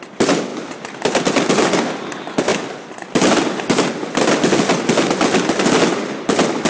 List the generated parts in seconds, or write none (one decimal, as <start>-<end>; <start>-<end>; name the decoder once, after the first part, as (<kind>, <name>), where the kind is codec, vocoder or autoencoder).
none